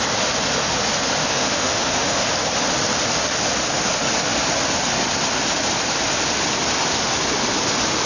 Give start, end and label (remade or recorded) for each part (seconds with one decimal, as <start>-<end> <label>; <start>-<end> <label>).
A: 0.0-1.3 recorded; 1.3-2.2 remade; 2.2-8.1 recorded